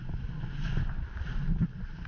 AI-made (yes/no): no